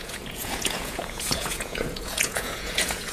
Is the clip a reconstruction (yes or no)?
yes